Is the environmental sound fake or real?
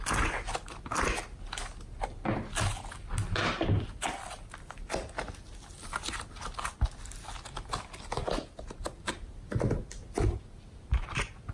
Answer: real